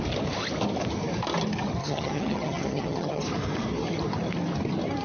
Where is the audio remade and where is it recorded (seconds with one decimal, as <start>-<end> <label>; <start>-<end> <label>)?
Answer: 0.0-1.8 recorded; 1.8-3.2 remade; 3.2-5.0 recorded